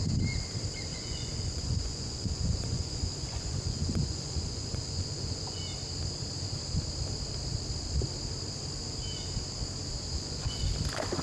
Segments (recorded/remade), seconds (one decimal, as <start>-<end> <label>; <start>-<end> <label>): 0.0-0.9 recorded; 0.9-5.6 remade; 5.6-10.1 recorded; 10.1-10.6 remade; 10.6-11.2 recorded